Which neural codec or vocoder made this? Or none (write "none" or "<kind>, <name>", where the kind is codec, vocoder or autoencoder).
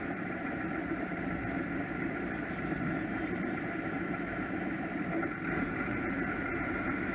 vocoder, BigVGAN v2